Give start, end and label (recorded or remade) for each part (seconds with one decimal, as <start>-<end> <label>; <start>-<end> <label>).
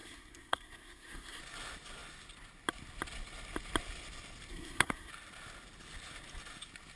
0.0-1.4 remade; 1.4-4.5 recorded; 4.5-5.1 remade; 5.1-7.0 recorded